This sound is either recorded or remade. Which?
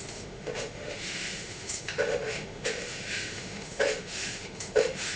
remade